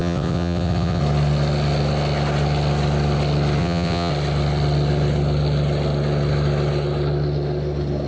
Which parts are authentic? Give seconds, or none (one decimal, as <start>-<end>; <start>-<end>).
1.0-3.6; 4.1-8.1